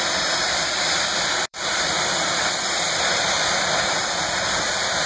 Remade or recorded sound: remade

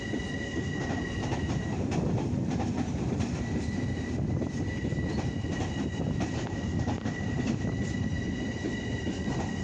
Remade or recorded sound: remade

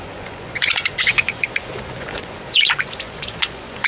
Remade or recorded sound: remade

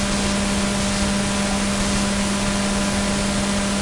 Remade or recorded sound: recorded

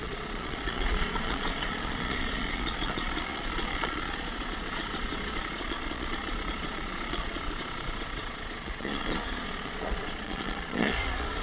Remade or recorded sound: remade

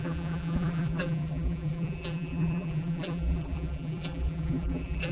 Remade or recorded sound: remade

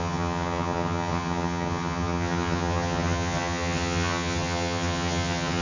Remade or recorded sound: remade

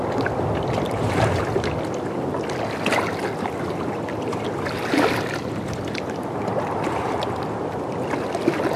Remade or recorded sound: recorded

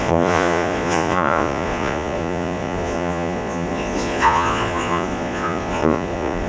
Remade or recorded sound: remade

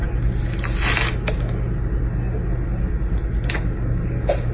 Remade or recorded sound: recorded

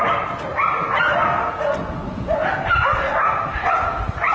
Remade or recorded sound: recorded